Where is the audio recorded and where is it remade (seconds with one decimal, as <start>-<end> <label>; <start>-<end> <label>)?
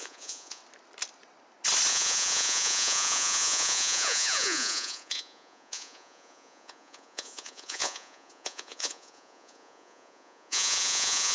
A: 0.0-0.6 remade; 0.6-1.9 recorded; 1.9-11.3 remade